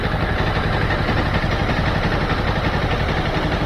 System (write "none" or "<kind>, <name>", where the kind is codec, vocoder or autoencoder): none